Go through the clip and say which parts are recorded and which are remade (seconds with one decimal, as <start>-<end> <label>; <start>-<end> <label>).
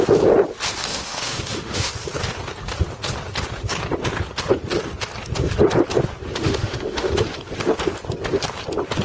0.0-0.9 recorded; 0.9-1.9 remade; 1.9-6.4 recorded; 6.4-7.1 remade; 7.1-9.0 recorded